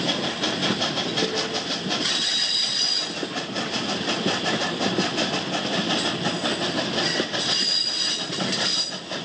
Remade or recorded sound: recorded